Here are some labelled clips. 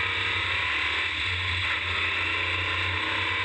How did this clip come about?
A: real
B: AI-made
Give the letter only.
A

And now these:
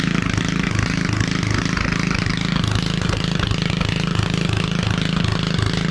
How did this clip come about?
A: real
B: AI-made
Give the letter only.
A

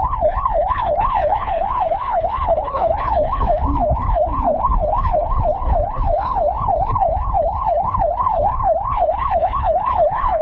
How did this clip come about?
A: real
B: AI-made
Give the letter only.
B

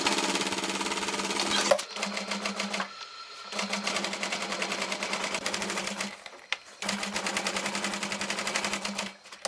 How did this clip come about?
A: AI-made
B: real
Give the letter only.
B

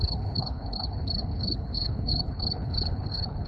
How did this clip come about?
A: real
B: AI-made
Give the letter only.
B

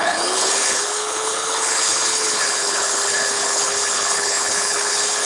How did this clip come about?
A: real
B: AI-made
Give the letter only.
B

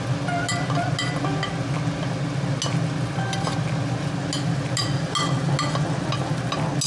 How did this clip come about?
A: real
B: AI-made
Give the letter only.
A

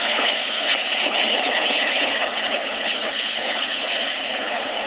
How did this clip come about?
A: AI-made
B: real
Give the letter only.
A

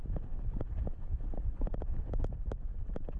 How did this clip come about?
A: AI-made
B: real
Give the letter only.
B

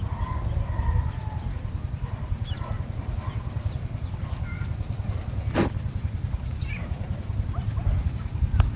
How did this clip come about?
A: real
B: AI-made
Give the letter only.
A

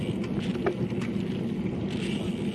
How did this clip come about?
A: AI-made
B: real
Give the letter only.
B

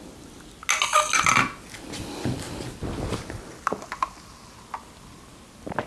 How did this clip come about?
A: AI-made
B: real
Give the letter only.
B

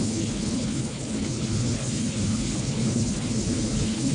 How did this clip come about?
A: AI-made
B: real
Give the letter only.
A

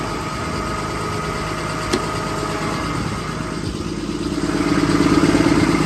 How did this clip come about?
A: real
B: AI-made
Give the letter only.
A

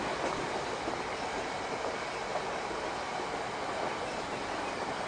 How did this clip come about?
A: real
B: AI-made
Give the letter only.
A